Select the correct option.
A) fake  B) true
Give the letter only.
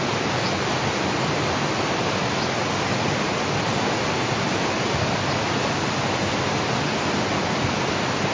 B